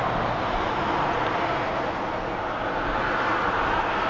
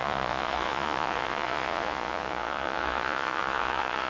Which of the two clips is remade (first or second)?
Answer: second